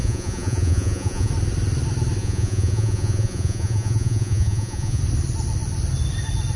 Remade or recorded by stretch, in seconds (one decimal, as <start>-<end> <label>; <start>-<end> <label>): 0.0-1.3 remade; 1.3-2.2 recorded; 2.2-5.0 remade; 5.0-6.6 recorded